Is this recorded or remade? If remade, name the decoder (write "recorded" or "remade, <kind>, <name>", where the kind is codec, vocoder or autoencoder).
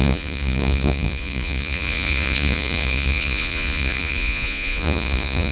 remade, vocoder, Vocos